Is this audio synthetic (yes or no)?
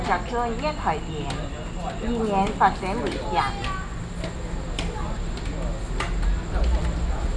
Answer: no